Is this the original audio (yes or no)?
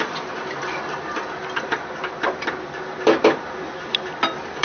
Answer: no